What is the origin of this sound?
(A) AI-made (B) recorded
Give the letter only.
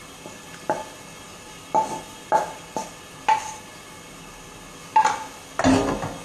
B